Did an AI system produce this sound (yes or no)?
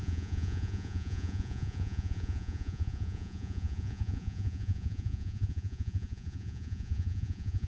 yes